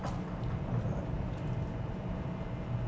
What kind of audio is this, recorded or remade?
recorded